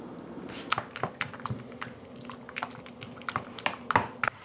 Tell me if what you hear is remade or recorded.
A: recorded